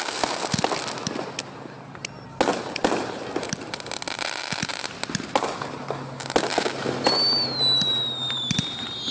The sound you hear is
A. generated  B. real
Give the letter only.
B